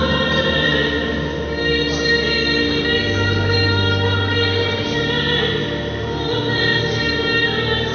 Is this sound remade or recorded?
recorded